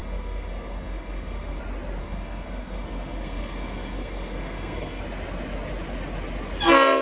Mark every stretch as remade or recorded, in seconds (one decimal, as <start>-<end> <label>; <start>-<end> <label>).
0.0-1.6 remade; 1.6-2.0 recorded; 2.0-5.0 remade; 5.0-7.0 recorded